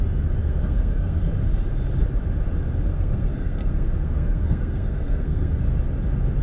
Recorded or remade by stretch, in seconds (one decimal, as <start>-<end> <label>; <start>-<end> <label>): 0.0-0.4 recorded; 0.4-1.3 remade; 1.3-2.9 recorded; 2.9-5.6 remade; 5.6-6.4 recorded

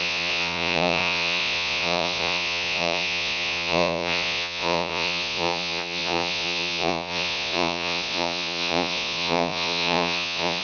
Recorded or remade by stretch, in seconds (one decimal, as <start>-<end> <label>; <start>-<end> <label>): 0.0-10.6 remade

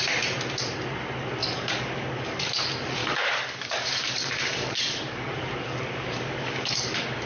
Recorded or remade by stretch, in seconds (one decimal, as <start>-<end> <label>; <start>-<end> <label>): 0.0-1.4 recorded; 1.4-2.6 remade; 2.6-3.0 recorded; 3.0-7.3 remade

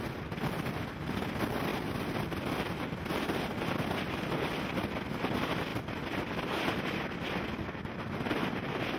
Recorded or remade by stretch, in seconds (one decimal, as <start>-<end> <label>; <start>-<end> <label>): 0.0-9.0 recorded

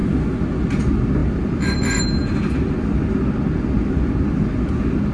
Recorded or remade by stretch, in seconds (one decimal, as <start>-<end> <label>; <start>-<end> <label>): 0.0-1.2 recorded; 1.2-2.0 remade; 2.0-5.1 recorded

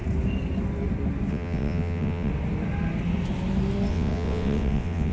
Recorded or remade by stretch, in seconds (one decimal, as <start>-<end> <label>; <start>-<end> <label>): 0.0-1.3 recorded; 1.3-2.3 remade; 2.3-3.9 recorded; 3.9-5.1 remade